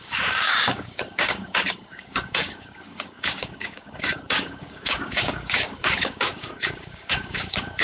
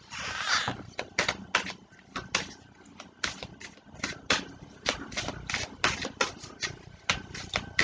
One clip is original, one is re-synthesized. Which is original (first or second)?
second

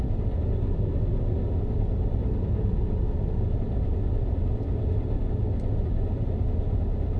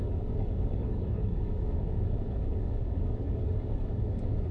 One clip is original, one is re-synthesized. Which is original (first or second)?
first